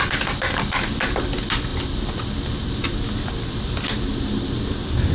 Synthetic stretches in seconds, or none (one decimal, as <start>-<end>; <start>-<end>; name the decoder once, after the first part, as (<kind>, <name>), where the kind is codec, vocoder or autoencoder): none